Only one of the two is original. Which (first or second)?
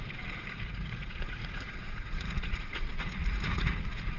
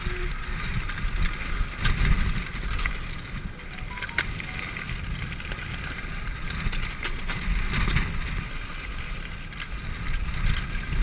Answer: second